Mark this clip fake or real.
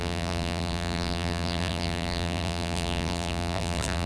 fake